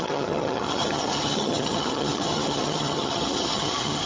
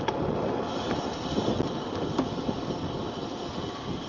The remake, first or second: first